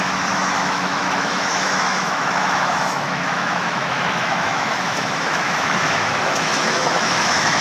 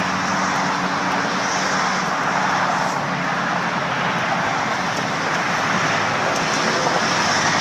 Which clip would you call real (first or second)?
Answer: second